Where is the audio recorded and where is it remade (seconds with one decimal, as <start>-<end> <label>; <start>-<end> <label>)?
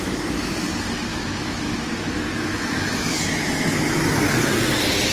0.0-1.1 recorded; 1.1-4.2 remade; 4.2-5.1 recorded